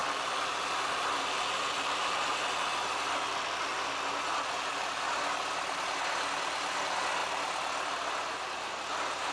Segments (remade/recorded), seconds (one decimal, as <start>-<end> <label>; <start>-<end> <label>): 0.0-3.7 remade; 3.7-7.2 recorded; 7.2-8.7 remade; 8.7-9.3 recorded